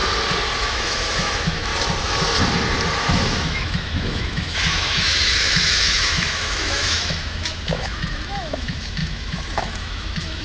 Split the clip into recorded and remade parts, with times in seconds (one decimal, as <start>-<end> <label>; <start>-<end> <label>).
0.0-0.6 recorded; 0.6-1.7 remade; 1.7-2.9 recorded; 2.9-10.4 remade